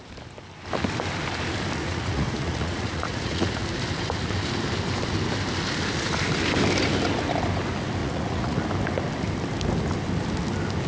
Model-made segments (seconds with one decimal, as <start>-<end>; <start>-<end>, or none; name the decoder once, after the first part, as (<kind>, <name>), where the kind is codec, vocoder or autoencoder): 1.8-3.6 (vocoder, Vocos); 8.0-8.6